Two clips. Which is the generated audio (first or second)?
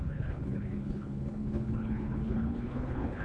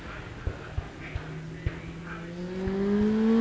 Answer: first